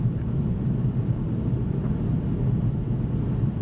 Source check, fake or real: real